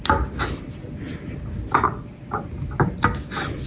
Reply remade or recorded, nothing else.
recorded